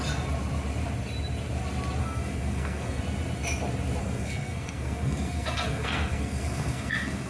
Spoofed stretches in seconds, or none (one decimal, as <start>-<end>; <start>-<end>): 2.0-3.0; 4.0-7.3